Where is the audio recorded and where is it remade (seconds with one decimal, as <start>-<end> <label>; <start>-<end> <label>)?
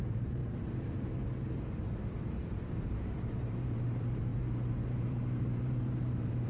0.0-0.4 remade; 0.4-2.0 recorded; 2.0-6.5 remade